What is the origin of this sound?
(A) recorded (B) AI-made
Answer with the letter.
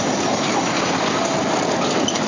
A